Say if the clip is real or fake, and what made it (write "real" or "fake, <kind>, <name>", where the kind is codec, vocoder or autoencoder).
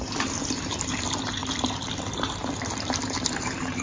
fake, vocoder, BigVGAN v2